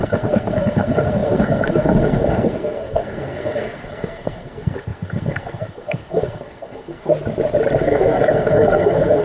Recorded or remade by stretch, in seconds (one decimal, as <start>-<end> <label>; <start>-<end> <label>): 0.0-7.1 remade; 7.1-7.8 recorded; 7.8-9.2 remade

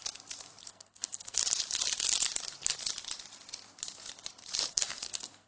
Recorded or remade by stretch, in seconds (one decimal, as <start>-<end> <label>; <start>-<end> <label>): 0.0-0.7 recorded; 0.7-1.4 remade; 1.4-4.7 recorded; 4.7-5.5 remade